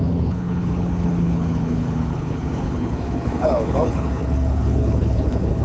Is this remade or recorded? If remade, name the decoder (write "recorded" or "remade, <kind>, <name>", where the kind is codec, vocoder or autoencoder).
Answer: remade, codec, HILCodec